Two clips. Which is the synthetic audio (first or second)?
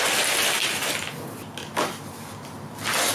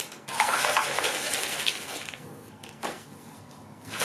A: second